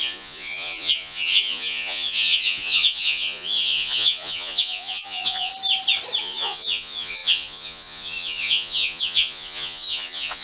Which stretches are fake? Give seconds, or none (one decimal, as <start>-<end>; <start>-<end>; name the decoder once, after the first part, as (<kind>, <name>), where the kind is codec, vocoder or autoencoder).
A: 0.0-5.5 (vocoder, Vocos); 6.2-10.4